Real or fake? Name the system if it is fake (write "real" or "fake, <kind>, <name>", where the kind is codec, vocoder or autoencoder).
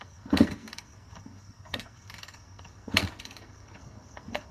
fake, codec, SNAC